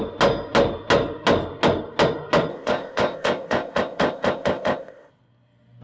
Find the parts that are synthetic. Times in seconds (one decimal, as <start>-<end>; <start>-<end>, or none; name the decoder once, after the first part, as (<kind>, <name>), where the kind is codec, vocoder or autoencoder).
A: 2.5-5.1 (codec, ZipCodec)